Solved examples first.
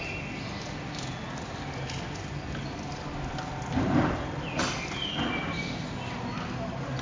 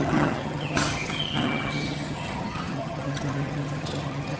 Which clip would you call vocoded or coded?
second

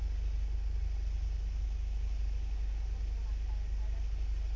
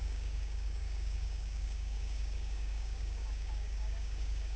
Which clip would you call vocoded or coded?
second